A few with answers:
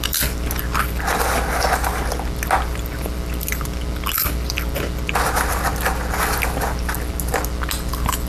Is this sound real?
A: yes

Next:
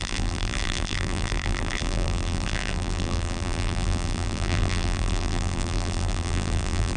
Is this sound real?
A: no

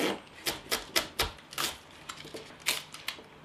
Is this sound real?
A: yes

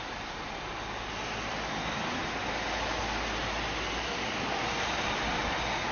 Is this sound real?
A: yes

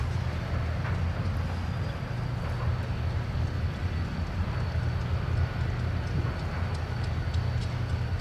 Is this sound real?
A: yes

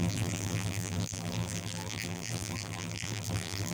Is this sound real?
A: no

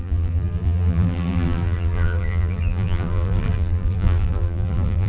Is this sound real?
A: no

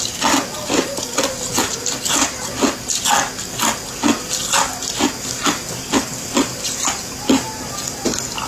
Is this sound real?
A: yes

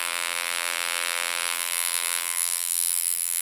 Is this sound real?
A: no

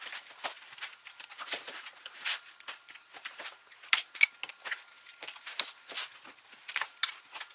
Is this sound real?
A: yes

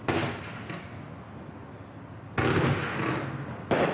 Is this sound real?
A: yes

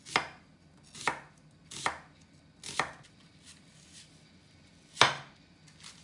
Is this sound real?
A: yes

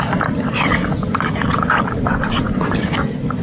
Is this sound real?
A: yes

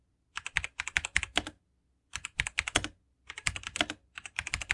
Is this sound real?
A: yes